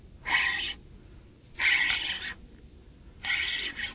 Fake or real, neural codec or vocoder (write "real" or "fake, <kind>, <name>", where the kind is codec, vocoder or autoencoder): real